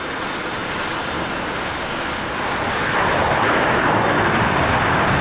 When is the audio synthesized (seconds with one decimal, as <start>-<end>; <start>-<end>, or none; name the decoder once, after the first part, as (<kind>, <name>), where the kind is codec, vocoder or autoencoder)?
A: none